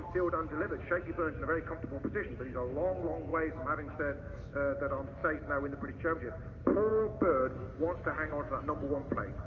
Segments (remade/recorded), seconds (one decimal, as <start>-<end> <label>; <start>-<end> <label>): 0.0-3.3 recorded; 3.3-4.7 remade; 4.7-6.9 recorded; 6.9-8.6 remade; 8.6-9.5 recorded